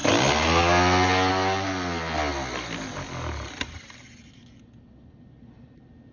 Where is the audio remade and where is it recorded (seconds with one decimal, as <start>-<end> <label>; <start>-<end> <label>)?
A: 0.0-6.1 recorded